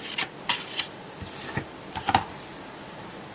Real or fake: fake